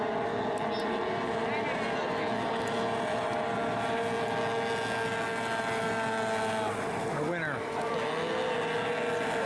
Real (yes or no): yes